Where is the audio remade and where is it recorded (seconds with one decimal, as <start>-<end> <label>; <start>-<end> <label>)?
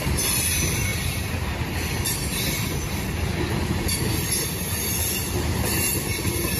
0.0-0.9 remade; 0.9-2.7 recorded; 2.7-3.3 remade; 3.3-4.8 recorded; 4.8-6.6 remade